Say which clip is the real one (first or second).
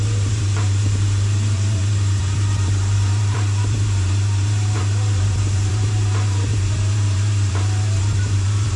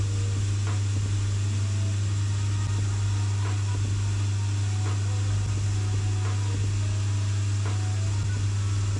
second